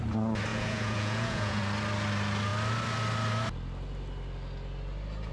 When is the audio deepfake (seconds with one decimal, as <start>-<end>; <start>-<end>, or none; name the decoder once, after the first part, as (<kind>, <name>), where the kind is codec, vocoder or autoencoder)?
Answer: 0.5-1.6 (vocoder, Vocos)

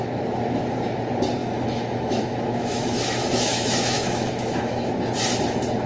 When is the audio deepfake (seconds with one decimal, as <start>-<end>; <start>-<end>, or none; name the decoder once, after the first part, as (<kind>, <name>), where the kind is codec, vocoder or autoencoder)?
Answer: 1.4-4.9 (autoencoder, DAC-VAE)

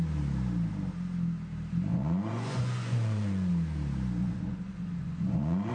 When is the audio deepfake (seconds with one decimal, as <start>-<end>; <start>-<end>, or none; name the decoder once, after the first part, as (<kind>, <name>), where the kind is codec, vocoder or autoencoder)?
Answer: 1.9-3.5 (vocoder, Vocos); 4.2-5.7

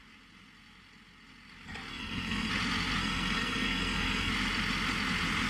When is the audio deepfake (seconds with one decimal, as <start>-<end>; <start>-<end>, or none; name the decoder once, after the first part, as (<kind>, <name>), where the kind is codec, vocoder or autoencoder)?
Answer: 1.9-2.5 (codec, SNAC); 3.0-4.3

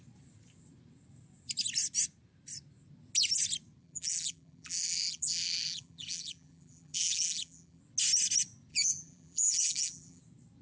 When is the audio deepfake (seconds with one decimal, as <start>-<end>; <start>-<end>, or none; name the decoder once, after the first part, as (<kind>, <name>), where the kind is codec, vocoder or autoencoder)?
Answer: 3.8-7.8 (vocoder, BigVGAN v2); 8.7-10.2